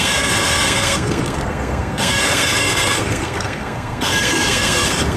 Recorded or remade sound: remade